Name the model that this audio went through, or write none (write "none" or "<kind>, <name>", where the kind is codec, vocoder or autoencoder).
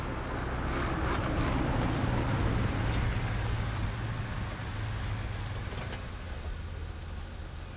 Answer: none